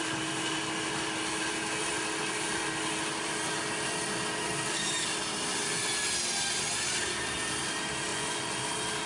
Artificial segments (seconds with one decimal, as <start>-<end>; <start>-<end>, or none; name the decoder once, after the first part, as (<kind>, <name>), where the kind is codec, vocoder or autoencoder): 8.1-8.6 (vocoder, Vocos)